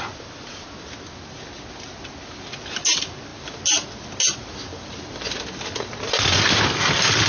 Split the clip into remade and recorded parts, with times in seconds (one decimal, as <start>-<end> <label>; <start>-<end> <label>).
0.0-7.3 recorded